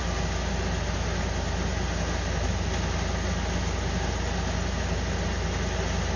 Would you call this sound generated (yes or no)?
no